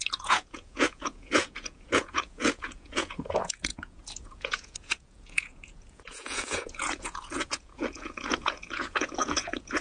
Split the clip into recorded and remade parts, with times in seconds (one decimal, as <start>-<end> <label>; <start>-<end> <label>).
0.0-9.8 remade